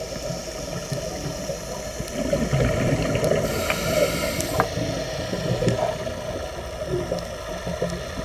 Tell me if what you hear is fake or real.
real